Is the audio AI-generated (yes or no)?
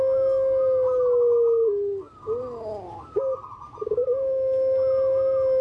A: no